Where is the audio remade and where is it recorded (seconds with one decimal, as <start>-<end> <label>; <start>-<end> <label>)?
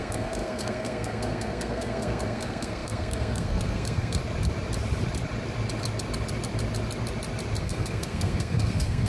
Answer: 0.0-4.2 remade; 4.2-7.6 recorded; 7.6-9.1 remade